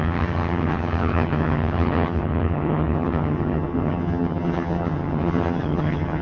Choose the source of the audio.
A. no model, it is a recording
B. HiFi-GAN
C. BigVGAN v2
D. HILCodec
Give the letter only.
B